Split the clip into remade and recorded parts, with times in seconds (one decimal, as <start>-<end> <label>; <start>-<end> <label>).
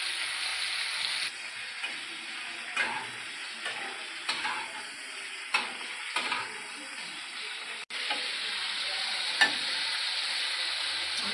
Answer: 0.0-11.3 recorded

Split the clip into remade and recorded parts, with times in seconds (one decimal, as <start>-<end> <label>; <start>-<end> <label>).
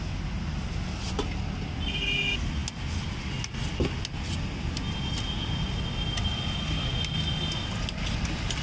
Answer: 0.0-8.6 recorded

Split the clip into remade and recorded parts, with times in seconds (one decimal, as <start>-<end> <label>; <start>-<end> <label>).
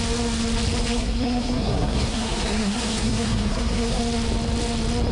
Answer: 0.0-0.9 recorded; 0.9-4.0 remade; 4.0-5.1 recorded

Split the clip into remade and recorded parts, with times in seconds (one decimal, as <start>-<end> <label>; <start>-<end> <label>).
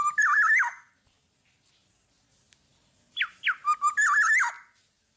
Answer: 0.0-5.2 recorded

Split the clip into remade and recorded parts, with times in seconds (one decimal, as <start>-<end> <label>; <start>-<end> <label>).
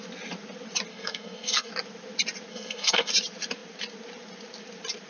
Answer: 0.0-0.9 recorded; 0.9-1.7 remade; 1.7-2.5 recorded; 2.5-3.1 remade; 3.1-5.1 recorded